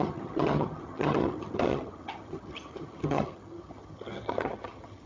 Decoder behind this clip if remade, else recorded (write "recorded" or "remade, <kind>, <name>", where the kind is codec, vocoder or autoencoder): remade, vocoder, HiFi-GAN